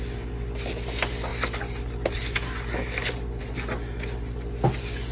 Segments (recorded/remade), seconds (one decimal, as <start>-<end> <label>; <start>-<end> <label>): 0.0-5.1 recorded